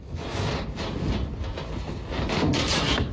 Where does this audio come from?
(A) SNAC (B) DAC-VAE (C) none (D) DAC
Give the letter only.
C